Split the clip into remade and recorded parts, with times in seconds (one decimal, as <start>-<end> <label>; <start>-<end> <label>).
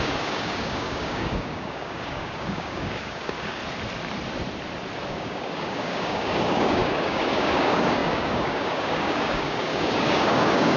0.0-3.6 remade; 3.6-5.1 recorded; 5.1-10.8 remade